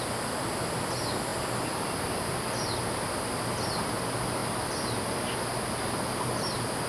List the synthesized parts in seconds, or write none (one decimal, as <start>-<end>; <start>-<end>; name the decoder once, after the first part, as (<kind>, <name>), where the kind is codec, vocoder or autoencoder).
none